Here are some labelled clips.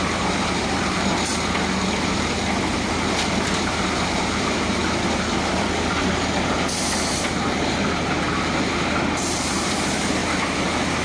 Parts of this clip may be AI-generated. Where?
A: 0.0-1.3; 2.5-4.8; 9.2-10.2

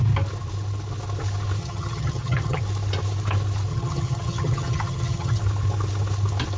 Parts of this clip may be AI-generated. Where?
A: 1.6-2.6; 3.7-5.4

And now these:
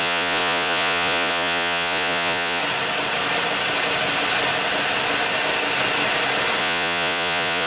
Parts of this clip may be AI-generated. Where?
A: 0.0-2.6; 6.6-7.7